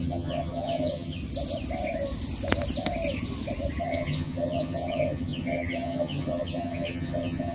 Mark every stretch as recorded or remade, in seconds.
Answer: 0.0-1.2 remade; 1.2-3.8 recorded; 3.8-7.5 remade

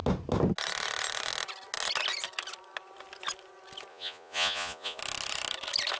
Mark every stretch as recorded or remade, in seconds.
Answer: 0.0-3.9 recorded; 3.9-5.0 remade; 5.0-6.0 recorded

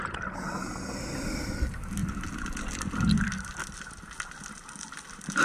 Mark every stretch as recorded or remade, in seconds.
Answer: 0.0-5.4 recorded

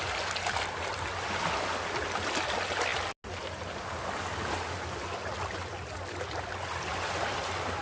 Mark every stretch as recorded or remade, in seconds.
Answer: 0.0-7.8 recorded

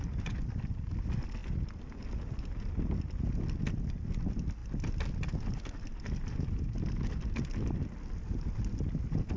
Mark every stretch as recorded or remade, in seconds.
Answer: 0.0-9.4 recorded

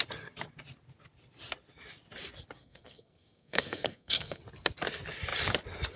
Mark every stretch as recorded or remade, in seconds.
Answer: 0.0-2.6 recorded; 2.6-4.4 remade; 4.4-6.0 recorded